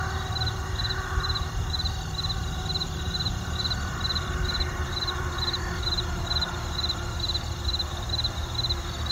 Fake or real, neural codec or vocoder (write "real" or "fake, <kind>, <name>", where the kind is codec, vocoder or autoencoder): real